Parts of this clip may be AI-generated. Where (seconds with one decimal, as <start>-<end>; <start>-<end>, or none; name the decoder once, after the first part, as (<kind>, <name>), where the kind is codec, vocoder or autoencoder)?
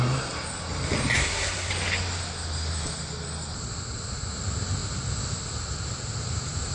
1.2-1.7 (codec, SNAC)